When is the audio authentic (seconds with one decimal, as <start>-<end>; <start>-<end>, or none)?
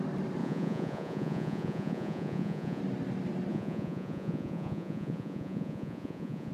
0.0-0.4; 2.8-3.5